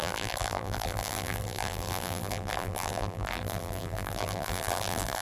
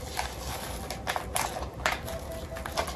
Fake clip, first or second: first